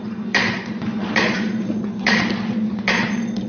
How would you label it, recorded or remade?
remade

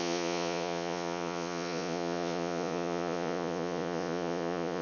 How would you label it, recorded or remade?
remade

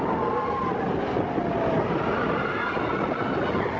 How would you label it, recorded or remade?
recorded